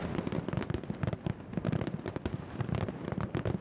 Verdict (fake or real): fake